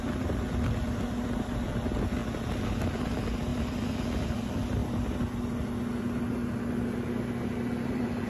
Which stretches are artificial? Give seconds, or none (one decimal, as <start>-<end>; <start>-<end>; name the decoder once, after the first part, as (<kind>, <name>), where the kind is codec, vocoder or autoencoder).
0.0-2.2 (vocoder, BigVGAN v2); 3.0-3.5; 4.3-4.8; 7.9-8.3